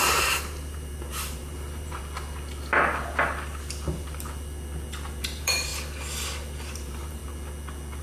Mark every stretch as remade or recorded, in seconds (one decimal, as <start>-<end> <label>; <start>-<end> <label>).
0.0-2.0 remade; 2.0-5.2 recorded; 5.2-5.7 remade; 5.7-6.7 recorded; 6.7-7.2 remade; 7.2-8.0 recorded